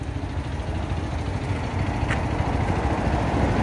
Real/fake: real